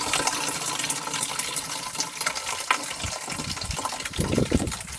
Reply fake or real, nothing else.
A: fake